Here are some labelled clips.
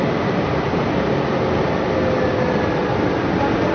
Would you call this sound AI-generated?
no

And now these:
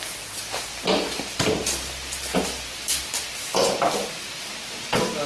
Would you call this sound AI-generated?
no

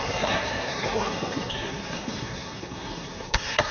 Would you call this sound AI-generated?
yes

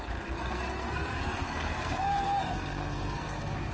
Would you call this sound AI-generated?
yes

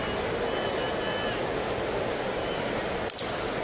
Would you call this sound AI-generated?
no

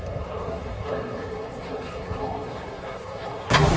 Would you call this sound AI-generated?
yes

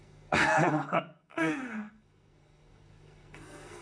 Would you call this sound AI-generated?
yes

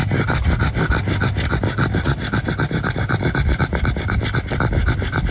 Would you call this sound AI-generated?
no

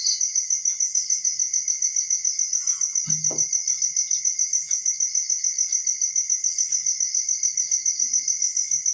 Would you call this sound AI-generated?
no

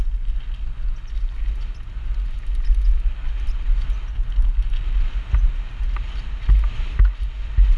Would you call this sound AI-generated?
no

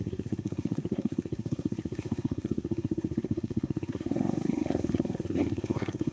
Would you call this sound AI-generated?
yes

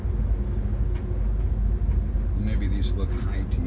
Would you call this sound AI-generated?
no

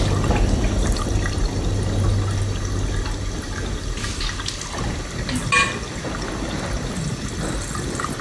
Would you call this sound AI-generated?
no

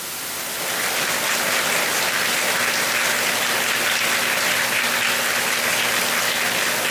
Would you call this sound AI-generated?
no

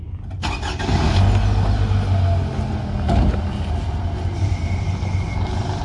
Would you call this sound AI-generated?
no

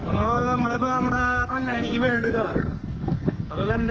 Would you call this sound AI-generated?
yes